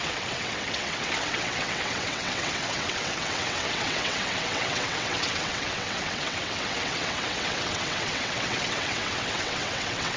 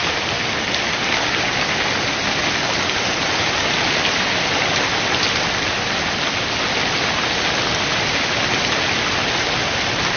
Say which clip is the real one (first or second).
second